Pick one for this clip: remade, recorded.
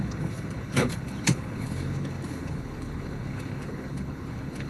remade